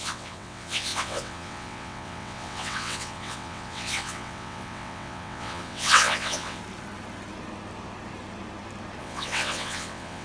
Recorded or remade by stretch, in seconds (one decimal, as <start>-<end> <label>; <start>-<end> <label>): 0.0-6.6 remade; 6.6-9.0 recorded; 9.0-10.2 remade